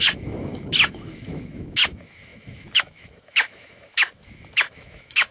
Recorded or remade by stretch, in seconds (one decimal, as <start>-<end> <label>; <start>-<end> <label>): 0.0-5.3 remade